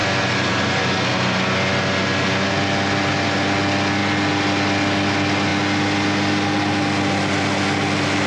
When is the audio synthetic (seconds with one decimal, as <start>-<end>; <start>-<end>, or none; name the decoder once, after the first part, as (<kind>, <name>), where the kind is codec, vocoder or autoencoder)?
none